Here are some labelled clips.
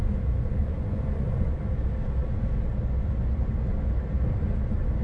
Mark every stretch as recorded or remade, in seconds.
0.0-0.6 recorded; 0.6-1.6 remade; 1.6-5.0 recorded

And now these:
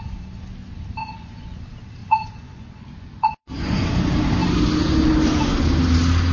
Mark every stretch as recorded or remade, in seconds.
0.0-1.0 recorded; 1.0-1.6 remade; 1.6-2.0 recorded; 2.0-3.8 remade; 3.8-6.3 recorded

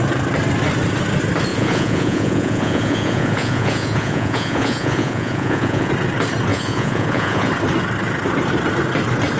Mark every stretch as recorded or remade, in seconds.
0.0-1.5 recorded; 1.5-5.9 remade; 5.9-6.5 recorded; 6.5-7.5 remade; 7.5-9.4 recorded